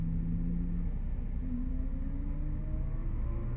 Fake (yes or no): no